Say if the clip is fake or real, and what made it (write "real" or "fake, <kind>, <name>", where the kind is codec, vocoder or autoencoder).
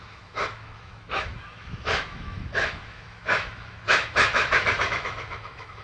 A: fake, autoencoder, DAC-VAE